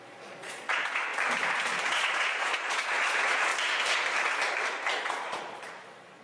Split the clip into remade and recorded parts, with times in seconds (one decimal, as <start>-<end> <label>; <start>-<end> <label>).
0.0-1.1 remade; 1.1-1.8 recorded; 1.8-3.5 remade; 3.5-5.0 recorded; 5.0-6.2 remade